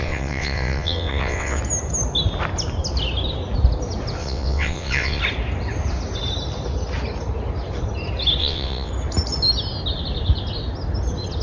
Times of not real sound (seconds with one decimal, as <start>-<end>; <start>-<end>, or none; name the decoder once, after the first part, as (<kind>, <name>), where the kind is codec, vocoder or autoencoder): 0.0-1.6 (vocoder, WaveNeXt); 4.2-5.2; 8.4-8.9